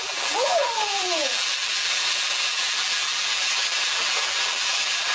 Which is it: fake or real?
fake